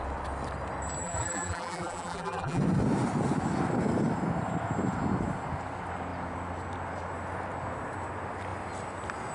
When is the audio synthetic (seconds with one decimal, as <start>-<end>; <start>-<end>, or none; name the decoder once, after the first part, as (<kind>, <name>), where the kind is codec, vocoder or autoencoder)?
1.0-2.6 (vocoder, BigVGAN v2)